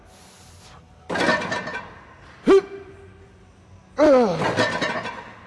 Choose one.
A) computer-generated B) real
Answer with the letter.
B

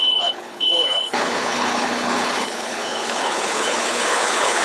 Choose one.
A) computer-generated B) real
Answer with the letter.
A